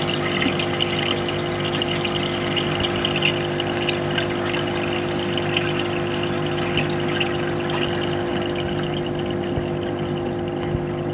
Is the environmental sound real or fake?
real